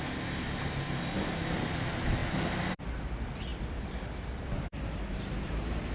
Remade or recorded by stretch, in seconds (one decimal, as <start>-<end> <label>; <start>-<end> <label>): 0.0-3.5 recorded; 3.5-5.2 remade; 5.2-5.9 recorded